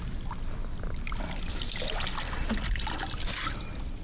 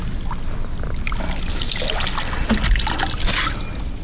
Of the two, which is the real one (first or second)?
second